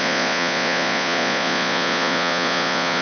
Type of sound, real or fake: fake